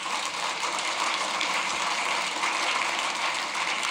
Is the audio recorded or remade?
remade